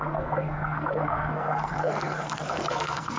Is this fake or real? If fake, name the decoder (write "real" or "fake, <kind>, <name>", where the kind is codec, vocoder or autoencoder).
fake, codec, SNAC